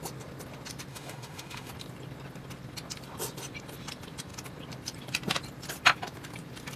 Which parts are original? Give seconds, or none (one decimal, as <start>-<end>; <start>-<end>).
0.0-0.9; 1.7-6.8